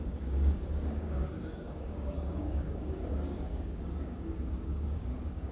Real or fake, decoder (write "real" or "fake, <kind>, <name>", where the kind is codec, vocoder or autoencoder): fake, codec, DAC